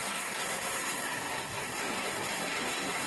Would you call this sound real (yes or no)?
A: no